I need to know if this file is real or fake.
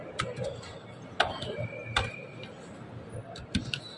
real